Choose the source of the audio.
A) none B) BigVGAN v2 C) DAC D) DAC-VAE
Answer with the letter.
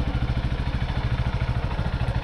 A